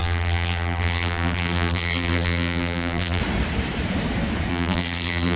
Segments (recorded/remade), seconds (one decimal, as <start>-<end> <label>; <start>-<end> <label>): 0.0-3.2 remade; 3.2-4.5 recorded; 4.5-5.4 remade